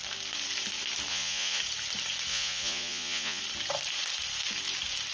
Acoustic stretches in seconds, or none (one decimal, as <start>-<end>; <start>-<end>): 0.0-1.1; 1.6-2.3; 3.4-5.1